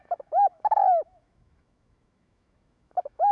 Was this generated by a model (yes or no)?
yes